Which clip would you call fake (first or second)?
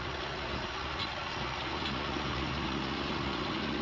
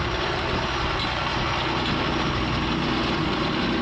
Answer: first